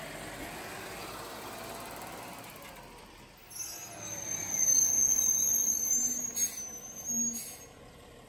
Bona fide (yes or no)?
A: yes